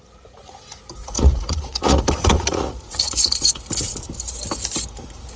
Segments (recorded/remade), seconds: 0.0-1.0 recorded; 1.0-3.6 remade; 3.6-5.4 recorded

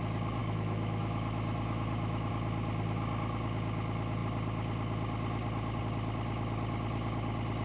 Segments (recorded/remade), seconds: 0.0-0.4 recorded; 0.4-2.3 remade; 2.3-7.6 recorded